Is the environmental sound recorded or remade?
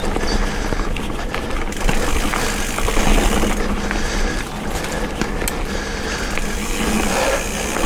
recorded